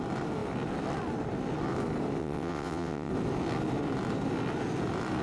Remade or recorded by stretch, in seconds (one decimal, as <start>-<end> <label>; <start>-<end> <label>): 0.0-2.2 recorded; 2.2-3.1 remade; 3.1-5.2 recorded